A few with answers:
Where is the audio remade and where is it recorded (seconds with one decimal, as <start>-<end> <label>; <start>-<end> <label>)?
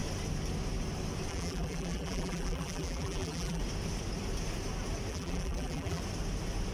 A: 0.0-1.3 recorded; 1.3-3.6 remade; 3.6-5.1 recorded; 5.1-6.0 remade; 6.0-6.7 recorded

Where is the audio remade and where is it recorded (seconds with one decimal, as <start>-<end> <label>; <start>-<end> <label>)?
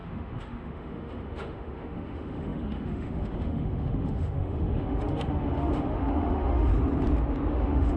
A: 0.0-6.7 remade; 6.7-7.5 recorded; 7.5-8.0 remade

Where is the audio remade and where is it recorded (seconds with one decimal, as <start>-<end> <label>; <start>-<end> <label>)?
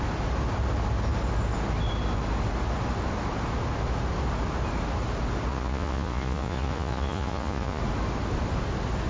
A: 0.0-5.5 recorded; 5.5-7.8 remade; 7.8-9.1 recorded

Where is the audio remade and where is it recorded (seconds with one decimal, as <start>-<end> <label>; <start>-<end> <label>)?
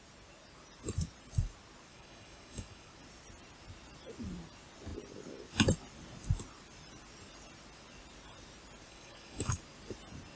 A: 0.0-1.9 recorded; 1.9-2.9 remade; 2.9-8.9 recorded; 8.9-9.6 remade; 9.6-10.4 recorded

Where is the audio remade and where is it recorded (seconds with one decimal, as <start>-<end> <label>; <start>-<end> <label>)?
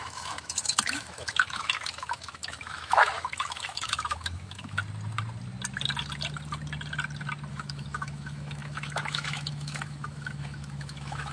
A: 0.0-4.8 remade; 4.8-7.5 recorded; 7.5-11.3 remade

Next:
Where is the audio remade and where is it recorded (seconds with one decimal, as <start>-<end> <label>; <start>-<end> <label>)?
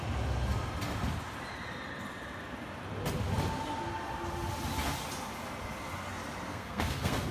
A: 0.0-6.5 recorded; 6.5-7.3 remade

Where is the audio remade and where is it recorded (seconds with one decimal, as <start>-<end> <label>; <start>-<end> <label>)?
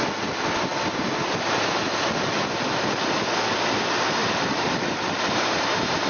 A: 0.0-4.2 recorded; 4.2-6.1 remade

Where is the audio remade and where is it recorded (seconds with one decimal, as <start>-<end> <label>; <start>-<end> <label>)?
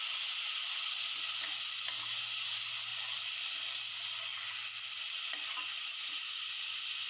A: 0.0-2.9 recorded; 2.9-3.9 remade; 3.9-4.3 recorded; 4.3-5.3 remade; 5.3-7.1 recorded